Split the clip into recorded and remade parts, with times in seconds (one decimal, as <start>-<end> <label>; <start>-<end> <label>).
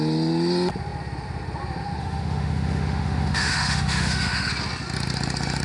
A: 0.0-2.0 recorded; 2.0-4.5 remade; 4.5-5.6 recorded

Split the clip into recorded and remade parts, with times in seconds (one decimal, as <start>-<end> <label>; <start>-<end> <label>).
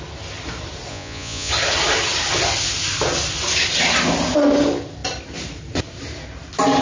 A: 0.0-0.9 recorded; 0.9-1.5 remade; 1.5-6.8 recorded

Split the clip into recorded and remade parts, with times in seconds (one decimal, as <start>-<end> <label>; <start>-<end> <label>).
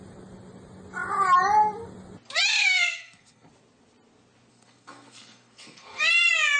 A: 0.0-2.6 recorded; 2.6-3.5 remade; 3.5-4.5 recorded; 4.5-6.1 remade; 6.1-6.6 recorded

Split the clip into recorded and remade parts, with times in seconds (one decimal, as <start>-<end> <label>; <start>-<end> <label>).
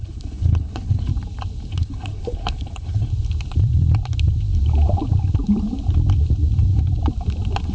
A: 0.0-1.1 remade; 1.1-1.7 recorded; 1.7-3.1 remade; 3.1-7.7 recorded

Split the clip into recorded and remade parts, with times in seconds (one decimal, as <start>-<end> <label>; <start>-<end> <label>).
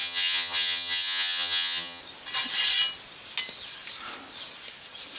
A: 0.0-2.0 remade; 2.0-5.2 recorded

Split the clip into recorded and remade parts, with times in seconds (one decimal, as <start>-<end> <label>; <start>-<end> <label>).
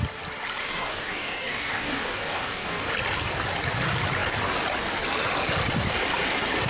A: 0.0-0.6 recorded; 0.6-2.9 remade; 2.9-6.7 recorded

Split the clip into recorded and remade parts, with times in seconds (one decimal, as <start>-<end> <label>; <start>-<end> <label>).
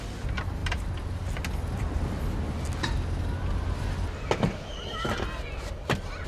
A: 0.0-6.3 recorded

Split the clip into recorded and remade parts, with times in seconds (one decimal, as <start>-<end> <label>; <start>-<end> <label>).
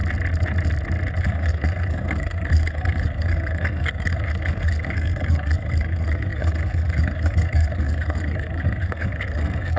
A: 0.0-1.2 recorded; 1.2-9.8 remade